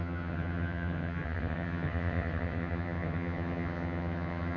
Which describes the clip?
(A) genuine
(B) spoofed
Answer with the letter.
B